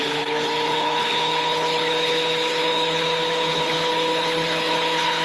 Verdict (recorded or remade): remade